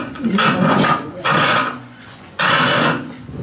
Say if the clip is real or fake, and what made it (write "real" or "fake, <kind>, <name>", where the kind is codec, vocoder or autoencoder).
fake, vocoder, Vocos